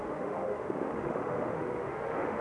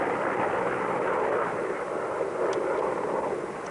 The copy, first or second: first